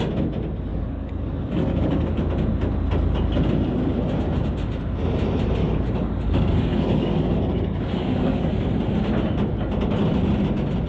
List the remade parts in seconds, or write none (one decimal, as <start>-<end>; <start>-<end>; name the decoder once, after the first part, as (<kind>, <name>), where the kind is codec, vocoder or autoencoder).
0.7-2.2 (codec, DAC); 5.6-8.5